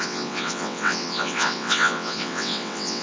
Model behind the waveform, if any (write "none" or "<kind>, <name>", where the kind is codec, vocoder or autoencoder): vocoder, WaveNeXt